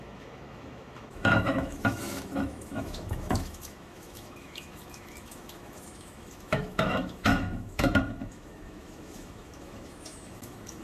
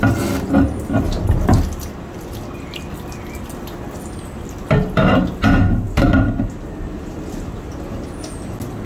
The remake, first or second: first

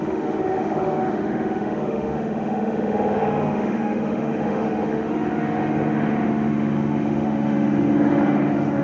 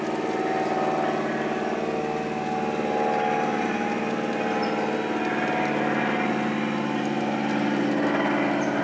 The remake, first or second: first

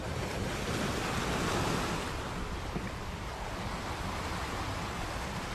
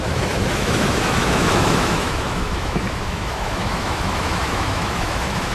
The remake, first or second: second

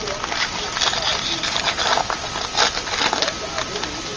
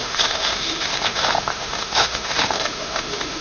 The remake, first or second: second